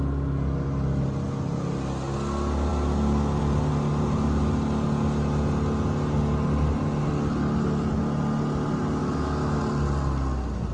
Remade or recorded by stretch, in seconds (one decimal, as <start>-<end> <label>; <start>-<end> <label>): 0.0-9.0 recorded; 9.0-9.6 remade; 9.6-10.7 recorded